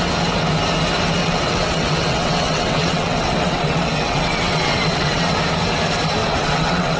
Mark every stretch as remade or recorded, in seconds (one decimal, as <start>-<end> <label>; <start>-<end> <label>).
0.0-1.2 recorded; 1.2-5.4 remade; 5.4-6.2 recorded; 6.2-7.0 remade